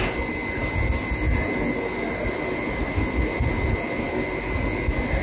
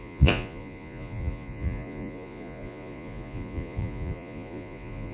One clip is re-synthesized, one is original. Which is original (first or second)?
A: first